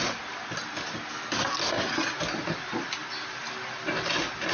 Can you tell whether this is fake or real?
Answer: real